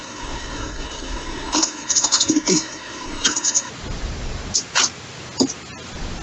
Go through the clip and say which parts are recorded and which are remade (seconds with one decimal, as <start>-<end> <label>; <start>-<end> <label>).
0.0-3.7 remade; 3.7-6.2 recorded